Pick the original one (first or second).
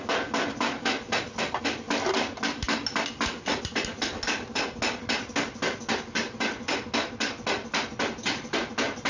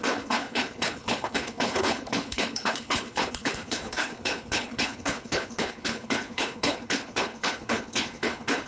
first